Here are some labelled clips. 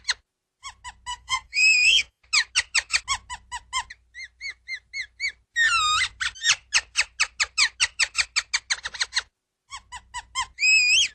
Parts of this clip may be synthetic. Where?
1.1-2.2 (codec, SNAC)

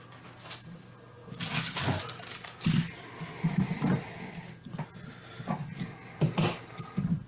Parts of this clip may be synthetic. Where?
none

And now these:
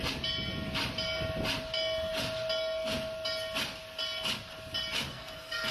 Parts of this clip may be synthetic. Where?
5.1-5.7 (codec, SNAC)

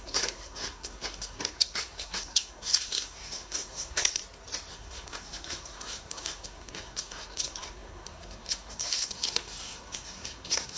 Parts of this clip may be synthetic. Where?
0.0-4.2 (codec, SNAC); 4.7-10.8

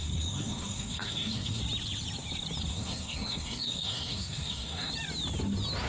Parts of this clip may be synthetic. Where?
0.0-1.6 (codec, SNAC); 2.7-4.9